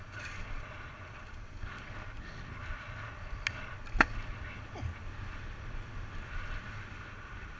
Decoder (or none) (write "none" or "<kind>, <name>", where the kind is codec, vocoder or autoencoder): none